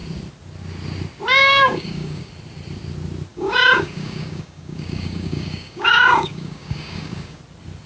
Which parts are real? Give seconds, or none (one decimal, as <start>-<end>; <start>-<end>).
0.0-1.4; 2.3-3.3; 7.4-7.9